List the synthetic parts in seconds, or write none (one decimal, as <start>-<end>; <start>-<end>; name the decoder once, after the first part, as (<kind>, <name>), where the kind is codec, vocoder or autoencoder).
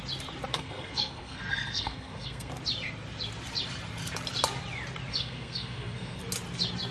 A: 0.5-2.5 (codec, SNAC); 5.1-6.2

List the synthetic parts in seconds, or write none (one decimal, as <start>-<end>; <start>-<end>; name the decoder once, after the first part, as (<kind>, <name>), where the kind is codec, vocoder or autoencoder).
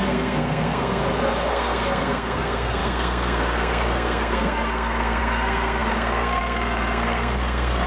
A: 0.0-1.0 (codec, SNAC); 1.5-7.9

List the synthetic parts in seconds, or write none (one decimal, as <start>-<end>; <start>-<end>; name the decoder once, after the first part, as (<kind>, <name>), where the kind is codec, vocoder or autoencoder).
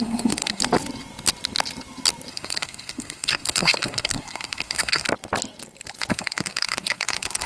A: 0.0-0.6 (codec, SNAC); 2.3-5.1; 6.1-7.5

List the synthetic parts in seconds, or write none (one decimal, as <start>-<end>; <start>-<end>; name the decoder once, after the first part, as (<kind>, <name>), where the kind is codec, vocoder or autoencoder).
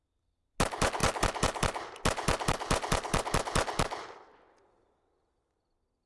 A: none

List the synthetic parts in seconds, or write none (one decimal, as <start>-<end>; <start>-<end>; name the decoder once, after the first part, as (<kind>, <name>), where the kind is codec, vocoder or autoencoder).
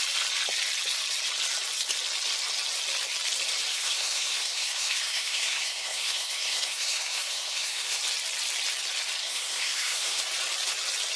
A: 3.7-8.0 (codec, SNAC); 9.2-10.2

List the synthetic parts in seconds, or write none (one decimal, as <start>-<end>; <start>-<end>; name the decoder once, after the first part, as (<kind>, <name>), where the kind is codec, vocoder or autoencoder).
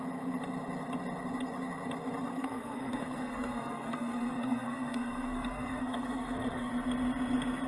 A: 2.3-6.7 (codec, SNAC)